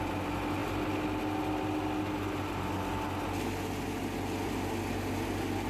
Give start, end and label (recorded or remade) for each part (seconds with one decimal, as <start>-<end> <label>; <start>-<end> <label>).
0.0-5.7 recorded